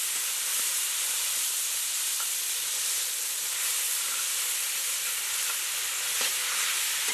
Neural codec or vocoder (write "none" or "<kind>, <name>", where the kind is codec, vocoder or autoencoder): none